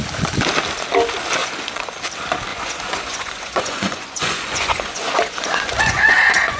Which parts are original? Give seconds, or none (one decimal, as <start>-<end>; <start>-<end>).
0.0-1.4; 2.0-2.5